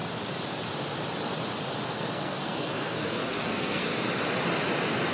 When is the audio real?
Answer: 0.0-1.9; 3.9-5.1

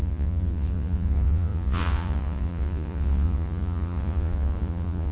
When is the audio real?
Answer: none

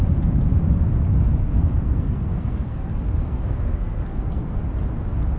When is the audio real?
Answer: 0.0-1.4; 4.6-5.4

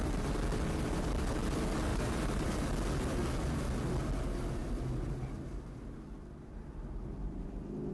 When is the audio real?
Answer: 0.0-1.9; 2.5-7.9

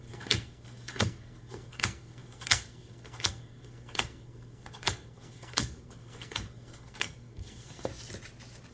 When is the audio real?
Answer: 7.9-8.7

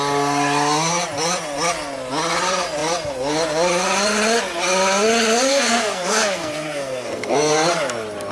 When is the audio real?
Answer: 0.0-5.5; 7.5-8.3

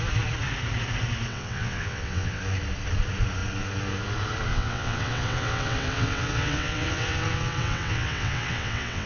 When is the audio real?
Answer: 0.0-1.3; 2.4-4.5